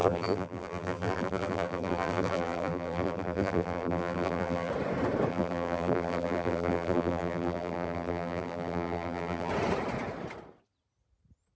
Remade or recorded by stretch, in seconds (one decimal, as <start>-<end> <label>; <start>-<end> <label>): 0.0-4.7 remade; 4.7-5.3 recorded; 5.3-9.5 remade; 9.5-11.5 recorded

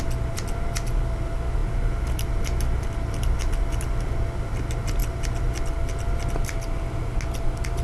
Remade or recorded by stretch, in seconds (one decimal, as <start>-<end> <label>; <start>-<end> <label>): 0.0-7.8 recorded

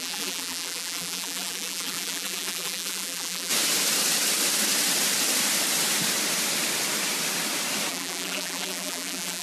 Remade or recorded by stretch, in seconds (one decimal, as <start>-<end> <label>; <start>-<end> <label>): 0.0-3.5 remade; 3.5-7.9 recorded; 7.9-9.4 remade

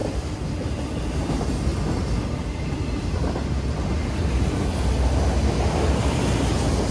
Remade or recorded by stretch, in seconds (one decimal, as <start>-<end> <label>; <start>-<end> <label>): 0.0-6.9 recorded

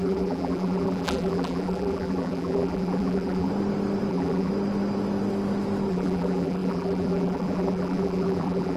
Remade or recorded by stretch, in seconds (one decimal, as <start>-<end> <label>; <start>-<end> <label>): 0.0-3.5 remade; 3.5-4.1 recorded; 4.1-4.5 remade; 4.5-5.9 recorded; 5.9-8.8 remade